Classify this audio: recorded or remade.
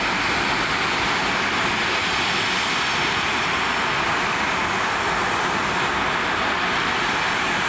recorded